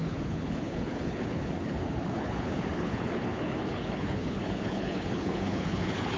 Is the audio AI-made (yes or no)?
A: yes